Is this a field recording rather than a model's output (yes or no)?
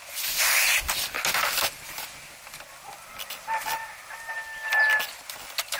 yes